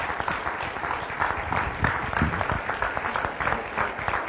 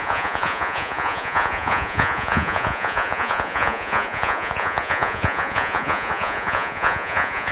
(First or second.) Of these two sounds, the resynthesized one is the second